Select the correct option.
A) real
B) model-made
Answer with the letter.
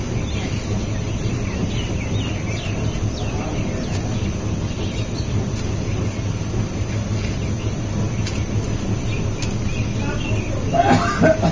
A